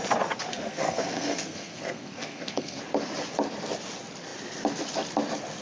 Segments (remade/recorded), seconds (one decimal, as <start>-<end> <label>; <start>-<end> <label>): 0.0-0.5 recorded; 0.5-2.8 remade; 2.8-5.6 recorded